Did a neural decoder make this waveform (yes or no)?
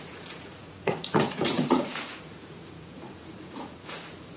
yes